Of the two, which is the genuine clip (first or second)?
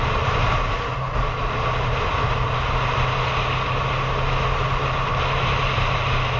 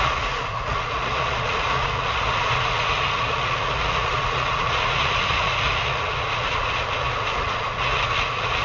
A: first